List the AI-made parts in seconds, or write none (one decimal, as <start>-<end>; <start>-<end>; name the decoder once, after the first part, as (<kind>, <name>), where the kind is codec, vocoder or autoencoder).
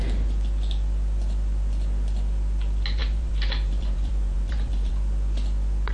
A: 3.0-4.9 (vocoder, BigVGAN v2)